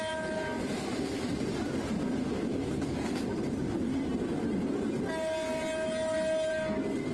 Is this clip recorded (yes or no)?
yes